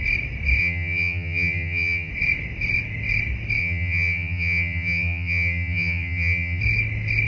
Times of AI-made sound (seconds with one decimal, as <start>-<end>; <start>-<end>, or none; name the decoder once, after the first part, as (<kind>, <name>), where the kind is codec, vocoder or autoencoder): 0.6-2.1 (vocoder, HiFi-GAN); 3.6-6.6

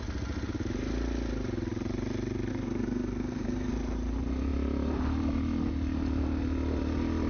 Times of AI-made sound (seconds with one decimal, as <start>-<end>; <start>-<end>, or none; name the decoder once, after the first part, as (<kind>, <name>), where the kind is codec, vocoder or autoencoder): 2.5-3.7 (codec, SNAC)

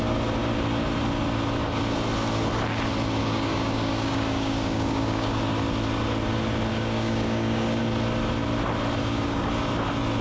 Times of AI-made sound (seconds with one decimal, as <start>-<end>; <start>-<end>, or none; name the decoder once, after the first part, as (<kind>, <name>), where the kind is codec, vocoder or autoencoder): 3.2-5.4 (codec, DAC); 6.7-7.8; 9.0-9.5

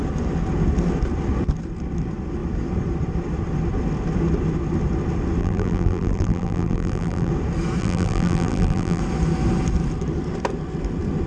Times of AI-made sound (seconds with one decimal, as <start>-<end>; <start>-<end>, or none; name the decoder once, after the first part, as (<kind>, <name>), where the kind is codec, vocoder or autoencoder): 5.4-7.3 (vocoder, BigVGAN v2); 7.8-9.0

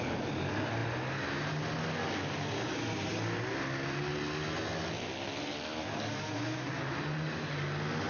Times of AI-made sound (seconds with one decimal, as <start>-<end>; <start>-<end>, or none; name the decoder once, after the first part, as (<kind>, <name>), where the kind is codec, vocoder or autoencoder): none

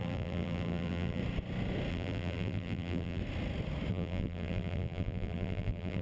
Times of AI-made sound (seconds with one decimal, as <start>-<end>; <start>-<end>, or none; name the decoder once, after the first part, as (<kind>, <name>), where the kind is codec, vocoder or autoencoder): 0.0-1.2 (vocoder, BigVGAN v2); 1.9-3.2; 3.9-6.0